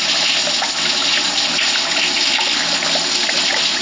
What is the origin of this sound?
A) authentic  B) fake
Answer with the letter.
A